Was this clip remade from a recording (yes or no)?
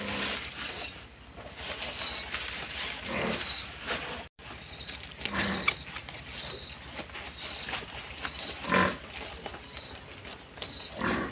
no